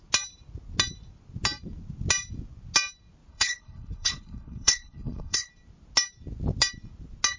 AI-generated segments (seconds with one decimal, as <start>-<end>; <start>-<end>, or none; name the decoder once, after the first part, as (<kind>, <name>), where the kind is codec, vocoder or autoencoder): 3.3-5.5 (codec, HILCodec)